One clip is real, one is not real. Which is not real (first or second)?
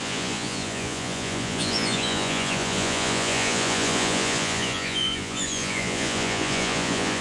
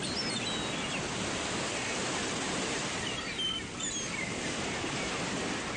first